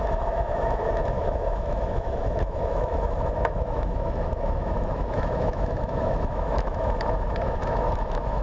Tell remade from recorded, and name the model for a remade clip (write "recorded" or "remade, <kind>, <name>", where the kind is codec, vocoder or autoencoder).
remade, autoencoder, DAC-VAE